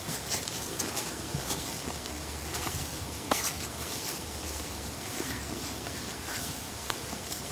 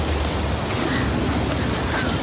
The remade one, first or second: first